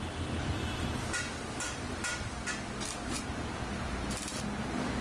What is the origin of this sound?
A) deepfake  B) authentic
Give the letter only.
B